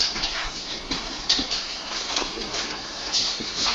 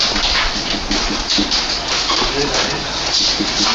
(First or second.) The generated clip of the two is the first